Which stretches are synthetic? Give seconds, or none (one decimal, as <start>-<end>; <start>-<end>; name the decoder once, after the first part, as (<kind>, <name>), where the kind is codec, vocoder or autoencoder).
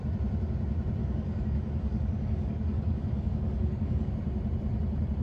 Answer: 1.0-4.1 (codec, DAC)